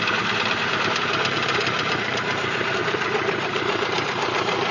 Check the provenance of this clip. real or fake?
fake